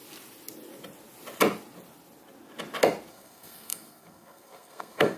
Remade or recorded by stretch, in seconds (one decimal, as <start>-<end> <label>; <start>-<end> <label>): 0.0-3.1 recorded; 3.1-5.2 remade